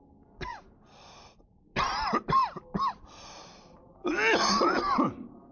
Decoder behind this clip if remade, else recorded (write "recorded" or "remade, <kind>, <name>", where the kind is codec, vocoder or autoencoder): recorded